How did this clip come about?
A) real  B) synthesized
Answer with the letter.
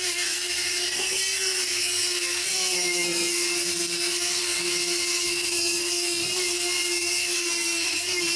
B